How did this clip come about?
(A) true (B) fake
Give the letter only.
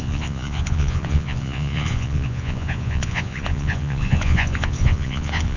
B